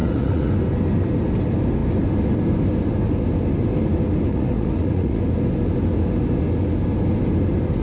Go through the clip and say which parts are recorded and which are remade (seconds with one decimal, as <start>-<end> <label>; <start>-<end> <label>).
0.0-0.5 remade; 0.5-4.3 recorded; 4.3-5.2 remade; 5.2-7.8 recorded